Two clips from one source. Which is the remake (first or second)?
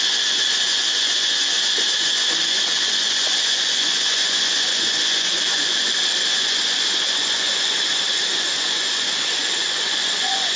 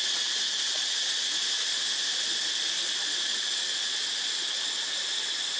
first